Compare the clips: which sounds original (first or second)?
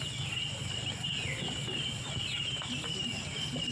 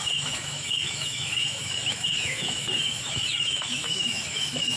first